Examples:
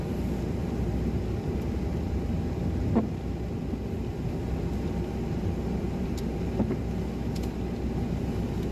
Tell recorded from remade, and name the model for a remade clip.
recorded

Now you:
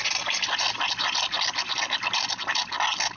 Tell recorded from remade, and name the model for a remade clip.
recorded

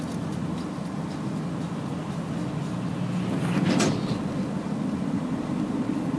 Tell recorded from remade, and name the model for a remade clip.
recorded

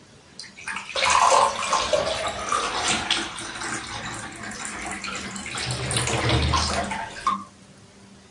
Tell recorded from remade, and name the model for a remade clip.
recorded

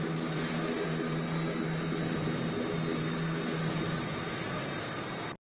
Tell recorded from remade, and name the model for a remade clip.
recorded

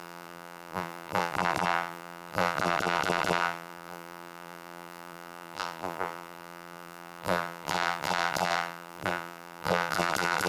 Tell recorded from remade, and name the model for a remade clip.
remade, vocoder, BigVGAN v2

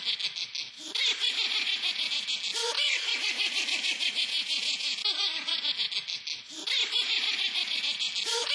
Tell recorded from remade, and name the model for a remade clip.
recorded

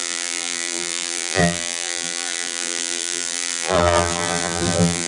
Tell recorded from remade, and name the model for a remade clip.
remade, vocoder, BigVGAN v2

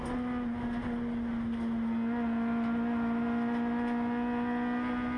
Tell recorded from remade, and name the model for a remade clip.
recorded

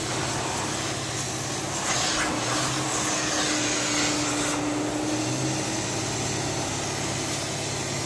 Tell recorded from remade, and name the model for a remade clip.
recorded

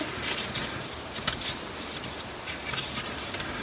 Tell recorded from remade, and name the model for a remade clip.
recorded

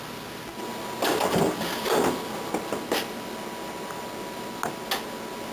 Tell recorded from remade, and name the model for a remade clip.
recorded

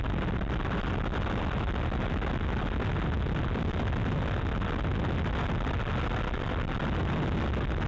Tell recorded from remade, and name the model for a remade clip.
recorded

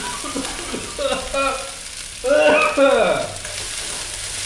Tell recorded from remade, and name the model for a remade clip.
recorded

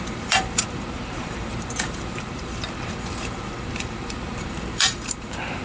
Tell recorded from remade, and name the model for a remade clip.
remade, vocoder, BigVGAN v2